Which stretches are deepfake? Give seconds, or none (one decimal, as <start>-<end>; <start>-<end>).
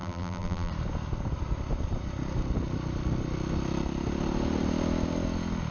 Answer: 0.0-0.7